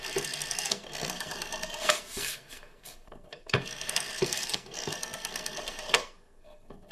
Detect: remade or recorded remade